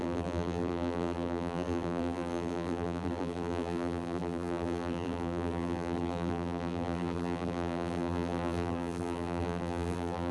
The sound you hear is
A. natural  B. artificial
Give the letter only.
B